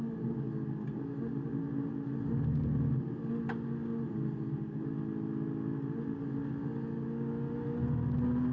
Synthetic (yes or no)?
no